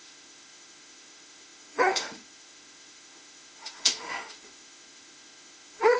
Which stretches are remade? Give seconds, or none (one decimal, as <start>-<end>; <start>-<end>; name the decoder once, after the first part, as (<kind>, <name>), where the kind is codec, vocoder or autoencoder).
0.0-6.0 (autoencoder, DAC-VAE)